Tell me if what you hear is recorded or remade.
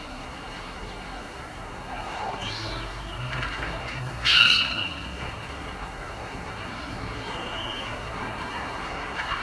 remade